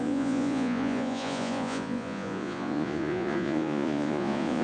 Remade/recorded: remade